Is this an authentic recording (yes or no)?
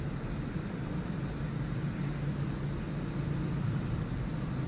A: yes